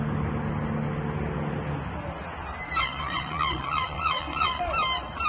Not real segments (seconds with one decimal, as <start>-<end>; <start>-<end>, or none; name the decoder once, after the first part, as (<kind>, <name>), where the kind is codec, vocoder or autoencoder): 2.8-4.6 (vocoder, WaveNeXt)